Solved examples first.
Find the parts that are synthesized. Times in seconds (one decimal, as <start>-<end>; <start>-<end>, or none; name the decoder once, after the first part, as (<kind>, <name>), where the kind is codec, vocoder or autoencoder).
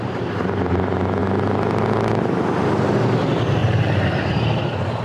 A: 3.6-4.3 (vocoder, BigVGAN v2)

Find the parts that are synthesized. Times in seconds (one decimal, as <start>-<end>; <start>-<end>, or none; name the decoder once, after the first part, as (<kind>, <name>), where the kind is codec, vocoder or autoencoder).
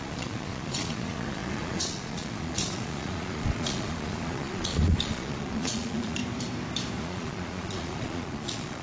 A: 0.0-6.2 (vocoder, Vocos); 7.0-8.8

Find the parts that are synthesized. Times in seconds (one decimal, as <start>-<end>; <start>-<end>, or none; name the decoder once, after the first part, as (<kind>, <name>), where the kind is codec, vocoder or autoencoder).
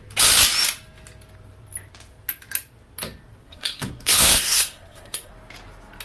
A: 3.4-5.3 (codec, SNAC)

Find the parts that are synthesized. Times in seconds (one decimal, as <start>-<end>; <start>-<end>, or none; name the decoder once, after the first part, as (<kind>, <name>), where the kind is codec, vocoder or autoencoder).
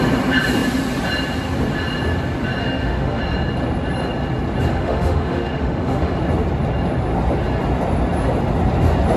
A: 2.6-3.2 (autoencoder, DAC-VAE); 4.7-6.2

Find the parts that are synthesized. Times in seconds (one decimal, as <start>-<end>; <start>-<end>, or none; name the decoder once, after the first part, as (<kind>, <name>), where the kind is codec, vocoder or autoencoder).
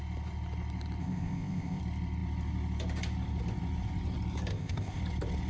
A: 1.0-1.8 (codec, ZipCodec); 4.5-5.0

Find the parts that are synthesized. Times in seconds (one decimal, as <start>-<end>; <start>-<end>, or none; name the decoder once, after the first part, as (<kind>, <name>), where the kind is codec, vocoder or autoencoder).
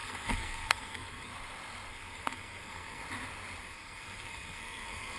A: 0.0-1.3 (codec, SNAC); 1.9-3.0; 3.6-5.2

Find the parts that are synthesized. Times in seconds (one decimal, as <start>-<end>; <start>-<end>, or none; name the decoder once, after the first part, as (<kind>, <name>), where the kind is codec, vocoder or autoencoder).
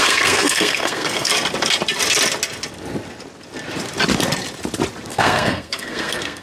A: 0.0-1.3 (codec, SNAC); 5.1-6.4